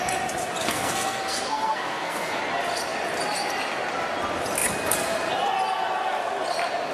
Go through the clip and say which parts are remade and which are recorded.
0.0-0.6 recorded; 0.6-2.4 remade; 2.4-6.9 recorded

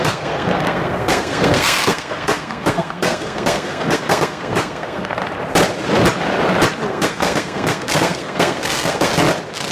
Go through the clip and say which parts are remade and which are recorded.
0.0-5.2 remade; 5.2-6.9 recorded; 6.9-9.1 remade; 9.1-9.7 recorded

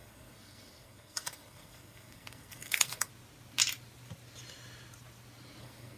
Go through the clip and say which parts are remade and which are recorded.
0.0-3.1 remade; 3.1-5.6 recorded; 5.6-6.0 remade